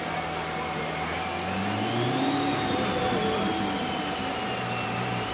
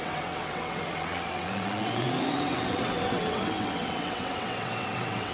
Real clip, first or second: first